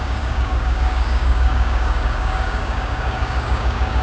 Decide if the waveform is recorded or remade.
remade